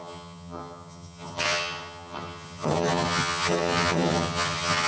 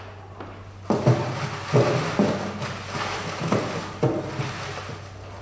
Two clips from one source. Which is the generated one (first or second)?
first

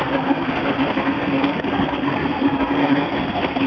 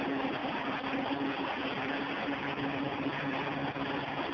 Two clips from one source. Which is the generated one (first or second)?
first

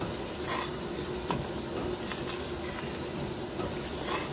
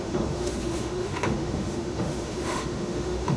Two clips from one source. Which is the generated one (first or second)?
second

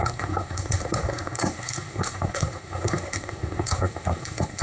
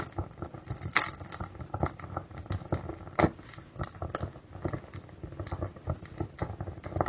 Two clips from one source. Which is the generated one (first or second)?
first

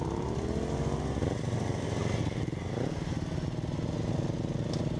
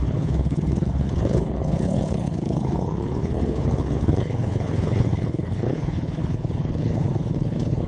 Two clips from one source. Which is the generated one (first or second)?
second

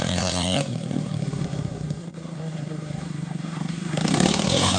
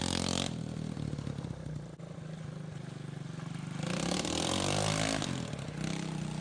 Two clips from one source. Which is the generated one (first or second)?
first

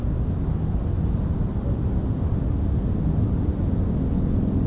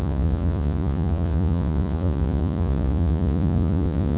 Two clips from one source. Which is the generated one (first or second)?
second